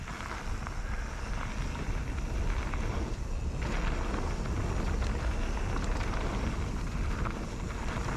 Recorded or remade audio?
recorded